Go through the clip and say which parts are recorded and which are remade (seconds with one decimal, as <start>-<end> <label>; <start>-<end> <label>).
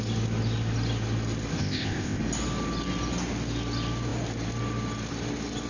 0.0-1.6 recorded; 1.6-2.2 remade; 2.2-5.7 recorded